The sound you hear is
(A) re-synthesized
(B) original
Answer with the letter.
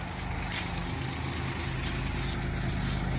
B